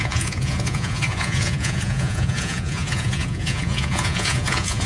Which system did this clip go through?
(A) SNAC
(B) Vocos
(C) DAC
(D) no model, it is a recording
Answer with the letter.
B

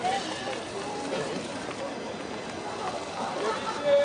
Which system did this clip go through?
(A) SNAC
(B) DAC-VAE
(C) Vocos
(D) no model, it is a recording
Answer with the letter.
D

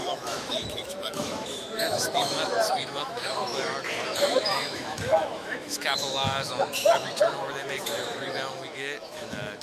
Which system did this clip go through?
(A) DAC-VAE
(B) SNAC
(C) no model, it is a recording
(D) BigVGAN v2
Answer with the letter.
A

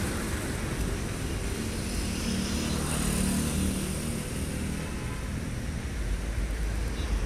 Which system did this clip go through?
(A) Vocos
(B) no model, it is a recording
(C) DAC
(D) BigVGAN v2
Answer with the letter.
B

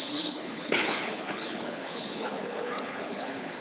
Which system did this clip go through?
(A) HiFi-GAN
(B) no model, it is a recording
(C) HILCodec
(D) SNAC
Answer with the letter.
C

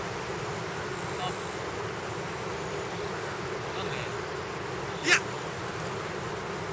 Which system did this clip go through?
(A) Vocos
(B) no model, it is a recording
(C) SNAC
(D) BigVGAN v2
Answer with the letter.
B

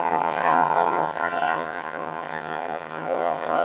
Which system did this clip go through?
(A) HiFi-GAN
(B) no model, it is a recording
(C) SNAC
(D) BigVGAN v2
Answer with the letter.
A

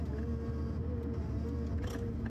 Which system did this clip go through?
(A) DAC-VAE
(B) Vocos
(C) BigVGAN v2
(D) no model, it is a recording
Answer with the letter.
D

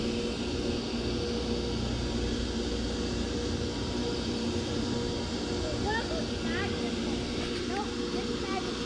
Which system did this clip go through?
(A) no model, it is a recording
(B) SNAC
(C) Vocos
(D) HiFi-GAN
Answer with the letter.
A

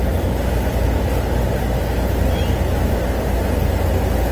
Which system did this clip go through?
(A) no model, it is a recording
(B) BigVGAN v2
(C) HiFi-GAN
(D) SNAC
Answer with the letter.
A